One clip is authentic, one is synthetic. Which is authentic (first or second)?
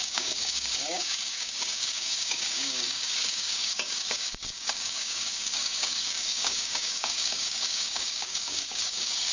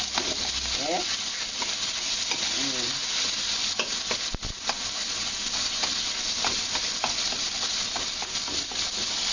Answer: second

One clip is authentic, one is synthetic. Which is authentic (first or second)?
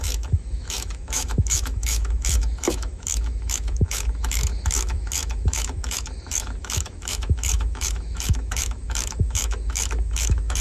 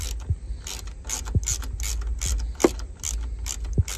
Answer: second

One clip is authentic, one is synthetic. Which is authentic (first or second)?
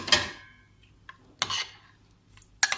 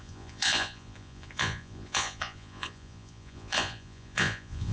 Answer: first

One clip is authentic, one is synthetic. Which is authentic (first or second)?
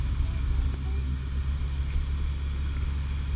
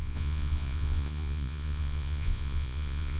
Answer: first